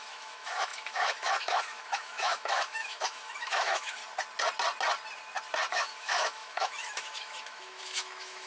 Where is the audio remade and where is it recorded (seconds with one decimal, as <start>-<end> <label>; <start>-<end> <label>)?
0.0-4.0 remade; 4.0-5.7 recorded; 5.7-8.5 remade